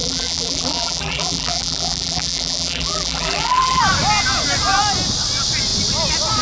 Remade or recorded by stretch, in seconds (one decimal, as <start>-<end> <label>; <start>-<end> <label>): 0.0-3.8 remade; 3.8-6.4 recorded